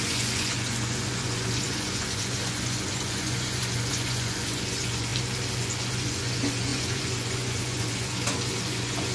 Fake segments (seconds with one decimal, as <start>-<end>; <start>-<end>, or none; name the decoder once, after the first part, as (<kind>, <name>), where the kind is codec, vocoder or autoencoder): 0.0-5.1 (vocoder, Vocos); 5.6-9.1